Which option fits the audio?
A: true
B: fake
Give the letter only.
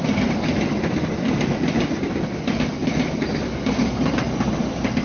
A